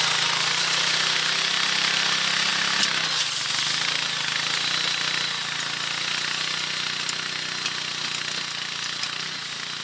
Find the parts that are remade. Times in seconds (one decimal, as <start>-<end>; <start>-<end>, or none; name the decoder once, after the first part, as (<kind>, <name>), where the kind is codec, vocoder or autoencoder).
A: none